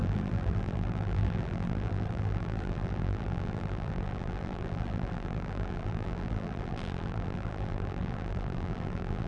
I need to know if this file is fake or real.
fake